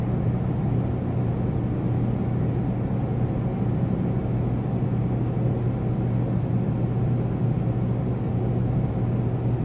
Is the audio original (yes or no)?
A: yes